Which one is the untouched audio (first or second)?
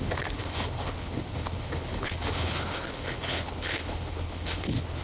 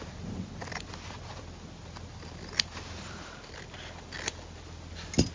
second